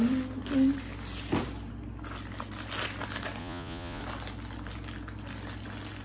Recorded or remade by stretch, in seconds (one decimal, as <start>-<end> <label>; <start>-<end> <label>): 0.0-3.4 recorded; 3.4-4.0 remade; 4.0-6.0 recorded

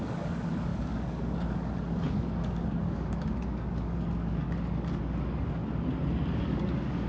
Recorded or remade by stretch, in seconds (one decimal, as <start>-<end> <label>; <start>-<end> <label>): 0.0-5.6 remade; 5.6-6.3 recorded; 6.3-7.1 remade

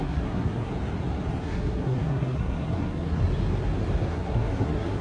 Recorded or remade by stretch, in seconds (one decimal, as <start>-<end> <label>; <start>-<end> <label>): 0.0-0.7 remade; 0.7-1.4 recorded; 1.4-3.2 remade; 3.2-4.1 recorded; 4.1-5.0 remade

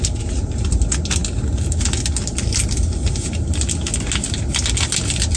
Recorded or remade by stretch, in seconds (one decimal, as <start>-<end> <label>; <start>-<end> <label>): 0.0-5.4 recorded

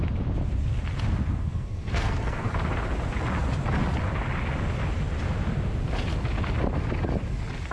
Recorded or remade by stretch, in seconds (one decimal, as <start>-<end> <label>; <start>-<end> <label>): 0.0-1.4 recorded; 1.4-2.5 remade; 2.5-7.7 recorded

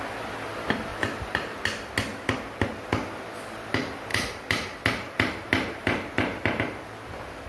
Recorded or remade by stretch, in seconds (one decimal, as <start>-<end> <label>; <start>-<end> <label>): 0.0-0.9 recorded; 0.9-1.6 remade; 1.6-4.1 recorded; 4.1-6.6 remade; 6.6-7.5 recorded

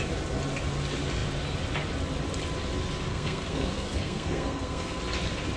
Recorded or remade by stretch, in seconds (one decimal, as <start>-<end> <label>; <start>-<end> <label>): 0.0-3.1 recorded; 3.1-5.0 remade; 5.0-5.6 recorded

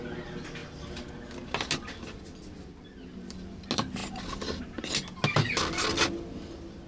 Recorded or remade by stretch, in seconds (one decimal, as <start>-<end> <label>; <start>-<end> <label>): 0.0-6.9 recorded